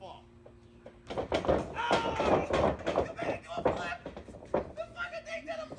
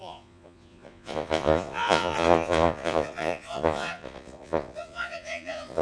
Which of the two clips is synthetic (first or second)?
second